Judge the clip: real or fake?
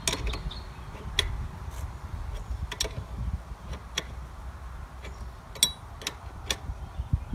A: real